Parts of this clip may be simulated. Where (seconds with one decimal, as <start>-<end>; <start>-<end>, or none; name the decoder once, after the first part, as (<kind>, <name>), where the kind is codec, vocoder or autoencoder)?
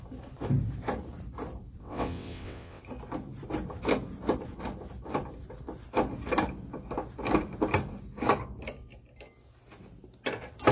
1.8-2.8 (vocoder, WaveNeXt)